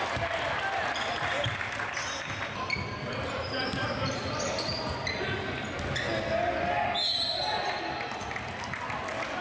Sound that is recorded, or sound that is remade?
recorded